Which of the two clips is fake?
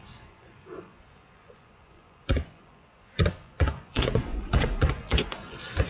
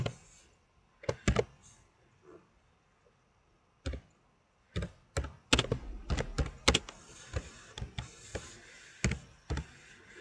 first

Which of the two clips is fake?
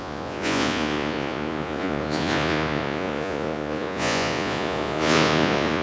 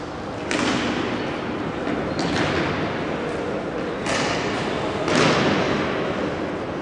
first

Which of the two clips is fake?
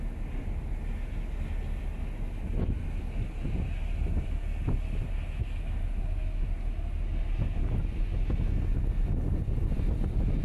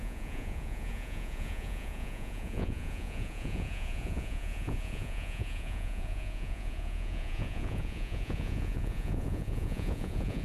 second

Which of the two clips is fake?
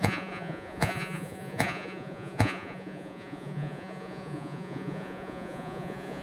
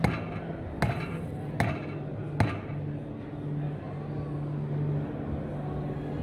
first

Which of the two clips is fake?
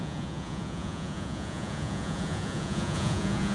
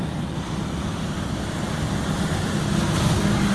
first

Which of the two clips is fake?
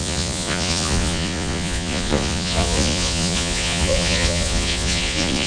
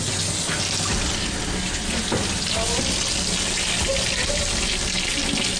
first